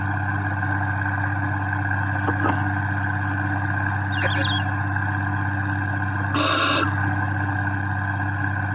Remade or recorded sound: recorded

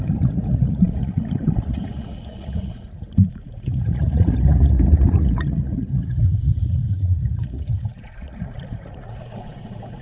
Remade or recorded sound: remade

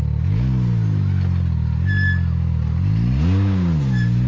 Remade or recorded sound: recorded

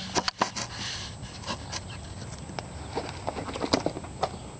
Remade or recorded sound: recorded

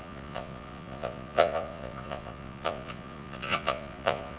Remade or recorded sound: remade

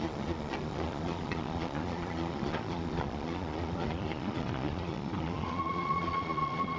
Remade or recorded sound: remade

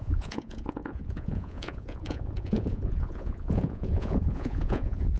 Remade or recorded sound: remade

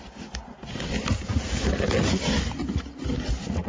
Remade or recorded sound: recorded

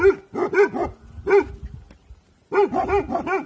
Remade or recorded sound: recorded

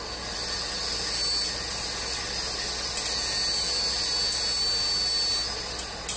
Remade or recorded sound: recorded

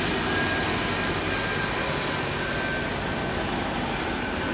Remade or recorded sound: recorded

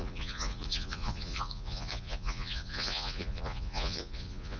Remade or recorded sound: remade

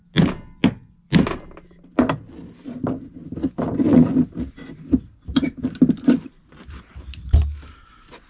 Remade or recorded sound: recorded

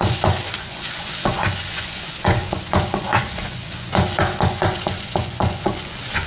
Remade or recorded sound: remade